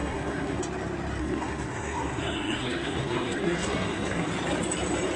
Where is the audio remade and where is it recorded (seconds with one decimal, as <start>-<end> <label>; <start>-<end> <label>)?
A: 0.0-0.6 remade; 0.6-1.2 recorded; 1.2-4.3 remade; 4.3-5.2 recorded